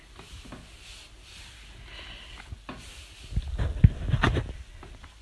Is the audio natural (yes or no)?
yes